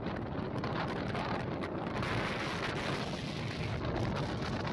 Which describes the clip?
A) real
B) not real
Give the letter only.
A